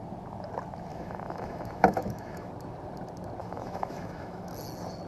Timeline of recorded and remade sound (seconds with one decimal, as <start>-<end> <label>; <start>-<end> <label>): 0.0-0.9 recorded; 0.9-2.5 remade; 2.5-3.4 recorded; 3.4-4.5 remade; 4.5-5.1 recorded